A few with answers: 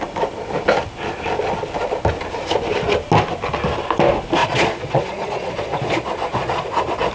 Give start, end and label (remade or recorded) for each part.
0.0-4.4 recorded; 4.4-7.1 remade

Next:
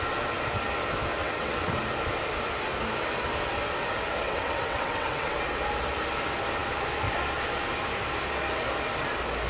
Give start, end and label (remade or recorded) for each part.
0.0-1.2 recorded; 1.2-1.7 remade; 1.7-4.2 recorded; 4.2-5.3 remade; 5.3-9.5 recorded